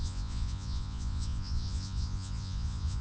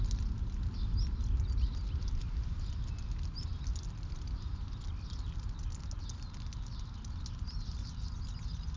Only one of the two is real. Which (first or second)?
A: second